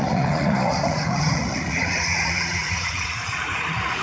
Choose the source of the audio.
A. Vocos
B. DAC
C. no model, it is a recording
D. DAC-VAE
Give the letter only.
A